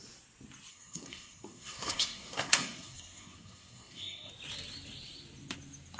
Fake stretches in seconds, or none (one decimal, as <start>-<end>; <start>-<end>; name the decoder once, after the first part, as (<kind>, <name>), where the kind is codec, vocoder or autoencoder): 0.7-4.3 (codec, SNAC)